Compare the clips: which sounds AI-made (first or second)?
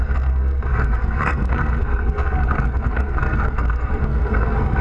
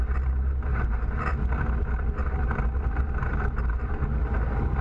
first